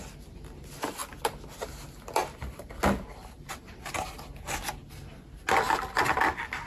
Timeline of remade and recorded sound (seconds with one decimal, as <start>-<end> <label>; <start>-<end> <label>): 0.0-6.7 recorded